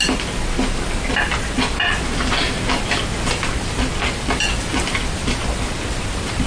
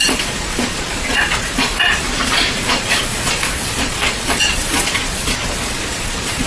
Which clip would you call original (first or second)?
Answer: first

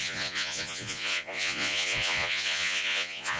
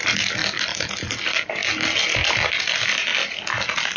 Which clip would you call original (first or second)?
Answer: second